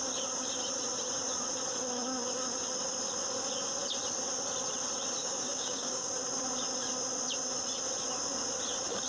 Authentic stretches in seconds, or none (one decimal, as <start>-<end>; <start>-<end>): 0.0-5.2; 6.1-9.1